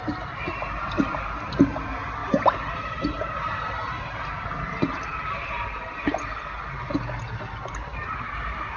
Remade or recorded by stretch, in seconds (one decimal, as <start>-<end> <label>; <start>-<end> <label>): 0.0-2.2 recorded; 2.2-4.0 remade; 4.0-8.8 recorded